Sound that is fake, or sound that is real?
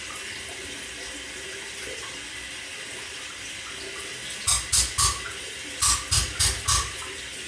real